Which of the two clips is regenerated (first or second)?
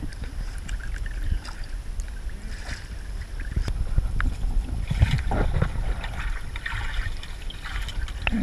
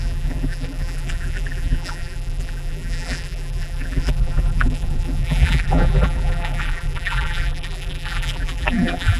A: second